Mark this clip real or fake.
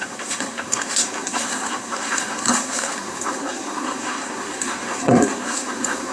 fake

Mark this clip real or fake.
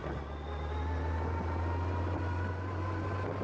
real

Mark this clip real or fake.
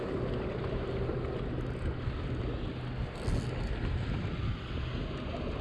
real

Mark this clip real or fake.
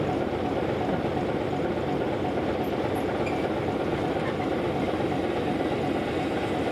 real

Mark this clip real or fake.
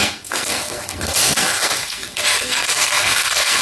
fake